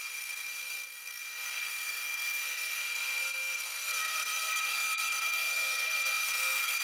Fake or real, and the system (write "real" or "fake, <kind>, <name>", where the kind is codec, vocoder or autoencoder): fake, codec, SNAC